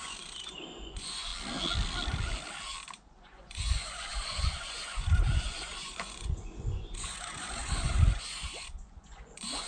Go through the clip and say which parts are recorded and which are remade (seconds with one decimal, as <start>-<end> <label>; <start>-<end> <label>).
0.0-1.3 remade; 1.3-3.1 recorded; 3.1-9.7 remade